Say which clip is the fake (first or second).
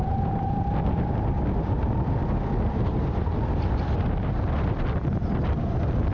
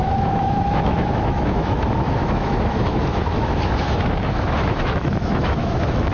second